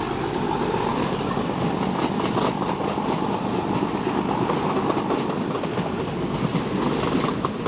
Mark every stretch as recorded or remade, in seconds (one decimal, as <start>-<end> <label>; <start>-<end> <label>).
0.0-7.7 recorded